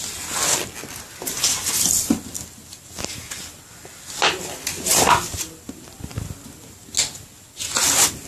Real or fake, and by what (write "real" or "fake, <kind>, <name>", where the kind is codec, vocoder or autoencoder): real